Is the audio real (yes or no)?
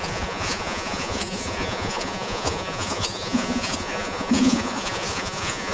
no